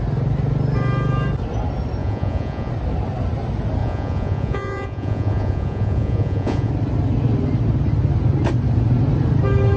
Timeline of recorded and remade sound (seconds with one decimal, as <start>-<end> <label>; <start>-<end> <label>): 0.0-2.0 recorded; 2.0-2.7 remade; 2.7-3.8 recorded; 3.8-6.7 remade; 6.7-9.8 recorded